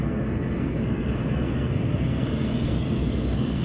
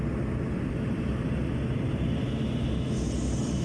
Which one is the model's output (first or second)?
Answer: first